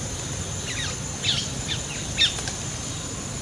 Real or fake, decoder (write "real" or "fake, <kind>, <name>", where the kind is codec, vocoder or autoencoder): real